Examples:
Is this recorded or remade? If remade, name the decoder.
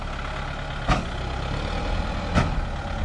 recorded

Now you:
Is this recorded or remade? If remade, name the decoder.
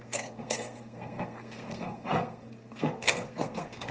remade, codec, SNAC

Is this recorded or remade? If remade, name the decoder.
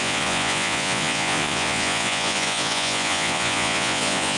remade, vocoder, Vocos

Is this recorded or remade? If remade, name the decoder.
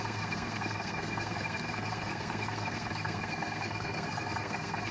remade, codec, SNAC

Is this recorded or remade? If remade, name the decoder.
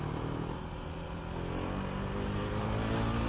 recorded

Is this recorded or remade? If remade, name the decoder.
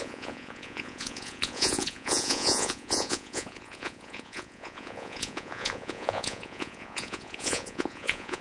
remade, vocoder, Vocos